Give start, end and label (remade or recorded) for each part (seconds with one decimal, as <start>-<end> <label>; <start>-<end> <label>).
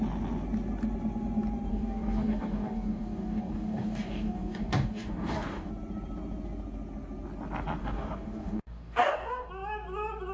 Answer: 0.0-1.7 recorded; 1.7-5.7 remade; 5.7-7.8 recorded; 7.8-9.5 remade; 9.5-10.3 recorded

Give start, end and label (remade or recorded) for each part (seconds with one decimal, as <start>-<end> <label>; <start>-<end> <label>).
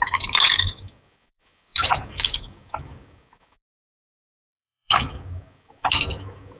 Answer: 0.0-6.6 remade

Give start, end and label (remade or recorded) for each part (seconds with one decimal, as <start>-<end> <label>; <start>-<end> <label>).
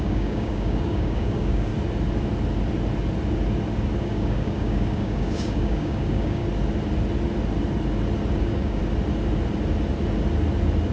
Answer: 0.0-1.7 remade; 1.7-4.0 recorded; 4.0-6.4 remade; 6.4-8.4 recorded; 8.4-8.8 remade; 8.8-10.9 recorded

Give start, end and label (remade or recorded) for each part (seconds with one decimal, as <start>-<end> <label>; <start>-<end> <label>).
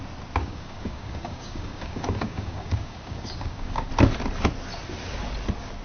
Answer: 0.0-0.4 recorded; 0.4-3.9 remade; 3.9-5.8 recorded